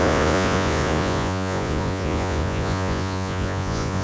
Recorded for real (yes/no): no